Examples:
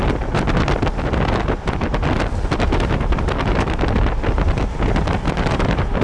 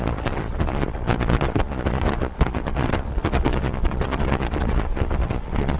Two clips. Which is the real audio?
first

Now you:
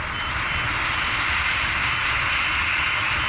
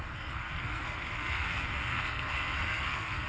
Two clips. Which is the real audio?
first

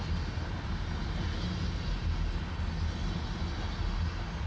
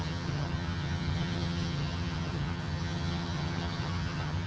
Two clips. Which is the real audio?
first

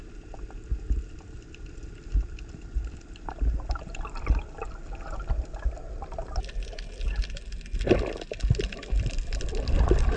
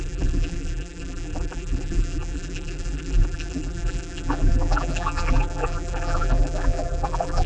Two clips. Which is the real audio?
first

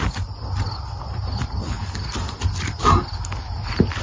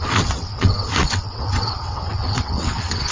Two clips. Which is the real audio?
first